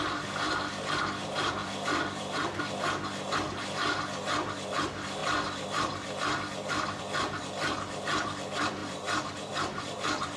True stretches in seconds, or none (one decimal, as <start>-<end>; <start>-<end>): 0.0-1.6; 2.7-5.2; 7.0-8.8